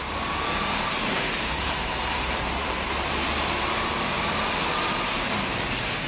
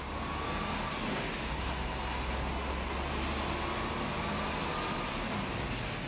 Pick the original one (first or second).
second